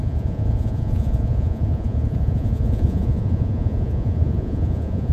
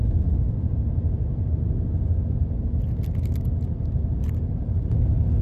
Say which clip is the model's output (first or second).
first